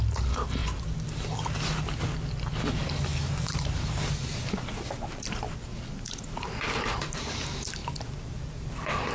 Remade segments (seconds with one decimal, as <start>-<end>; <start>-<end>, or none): 0.0-0.6; 2.7-9.1